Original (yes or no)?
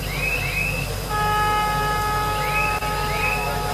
yes